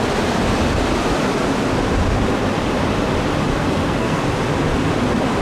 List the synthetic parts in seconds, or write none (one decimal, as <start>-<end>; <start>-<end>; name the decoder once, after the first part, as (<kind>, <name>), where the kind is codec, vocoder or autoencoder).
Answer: 3.5-4.2 (codec, SNAC)